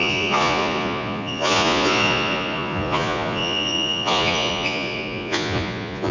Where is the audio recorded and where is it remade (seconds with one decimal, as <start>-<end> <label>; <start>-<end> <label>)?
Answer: 0.0-6.1 remade